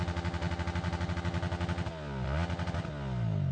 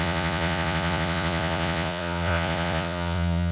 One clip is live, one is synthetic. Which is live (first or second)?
first